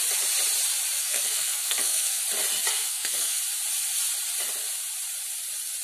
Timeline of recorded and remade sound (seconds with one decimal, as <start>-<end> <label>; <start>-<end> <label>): 0.0-1.0 recorded; 1.0-2.2 remade; 2.2-2.7 recorded; 2.7-3.4 remade; 3.4-5.8 recorded